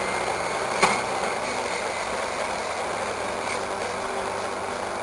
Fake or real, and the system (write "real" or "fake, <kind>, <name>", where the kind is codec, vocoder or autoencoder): real